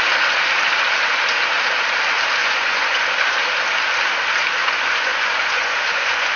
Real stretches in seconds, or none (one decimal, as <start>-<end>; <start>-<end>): 0.0-2.4; 3.0-4.6